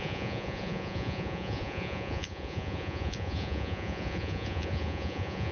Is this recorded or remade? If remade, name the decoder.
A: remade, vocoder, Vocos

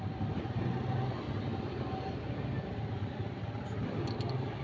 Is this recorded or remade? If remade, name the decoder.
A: recorded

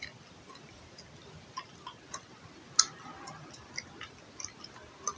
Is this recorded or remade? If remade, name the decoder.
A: recorded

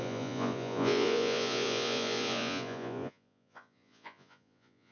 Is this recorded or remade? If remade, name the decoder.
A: remade, vocoder, Vocos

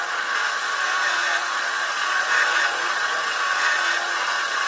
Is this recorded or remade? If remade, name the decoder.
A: remade, vocoder, Vocos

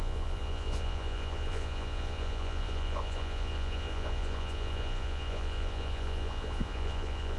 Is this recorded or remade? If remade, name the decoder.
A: remade, vocoder, Vocos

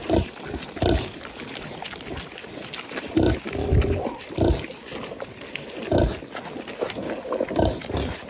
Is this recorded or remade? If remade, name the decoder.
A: recorded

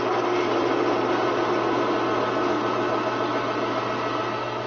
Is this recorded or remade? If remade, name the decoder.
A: recorded